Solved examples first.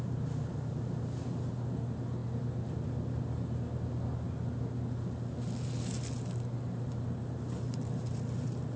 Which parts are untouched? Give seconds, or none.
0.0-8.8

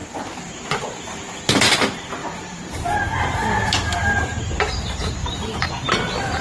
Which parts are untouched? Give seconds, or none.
0.8-2.2; 3.0-4.0; 4.7-5.2; 5.8-6.4

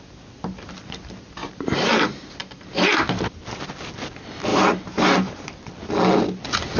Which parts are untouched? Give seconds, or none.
0.0-1.4; 1.9-4.5; 5.7-6.8

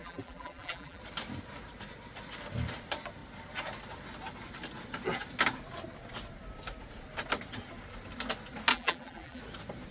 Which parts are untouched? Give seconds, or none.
1.0-8.7; 9.4-9.9

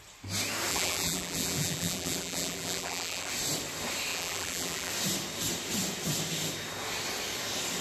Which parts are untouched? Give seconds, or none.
0.0-0.7; 3.3-4.1; 4.9-7.8

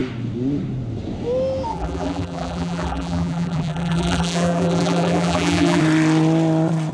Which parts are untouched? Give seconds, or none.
0.0-1.7; 5.8-6.9

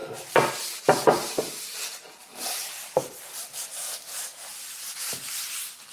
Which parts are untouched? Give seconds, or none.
0.5-2.3; 2.9-5.9